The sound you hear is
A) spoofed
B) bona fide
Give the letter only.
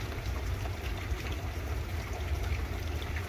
A